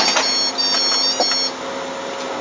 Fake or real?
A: real